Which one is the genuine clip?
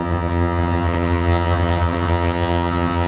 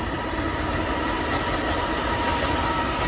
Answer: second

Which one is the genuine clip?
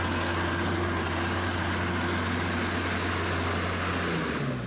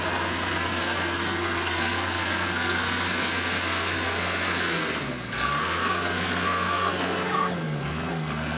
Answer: first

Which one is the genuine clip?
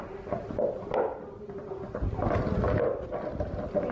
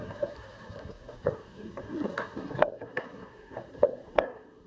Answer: first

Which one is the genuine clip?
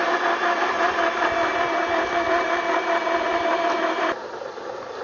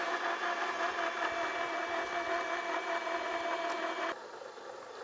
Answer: second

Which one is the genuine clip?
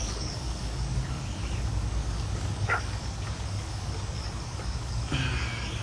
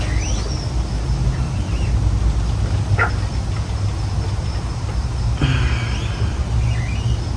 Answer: second